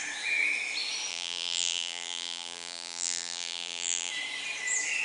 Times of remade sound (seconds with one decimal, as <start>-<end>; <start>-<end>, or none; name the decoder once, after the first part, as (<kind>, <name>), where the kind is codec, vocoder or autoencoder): 1.1-4.1 (vocoder, BigVGAN v2)